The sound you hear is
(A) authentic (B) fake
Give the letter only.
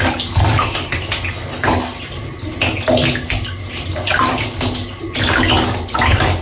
A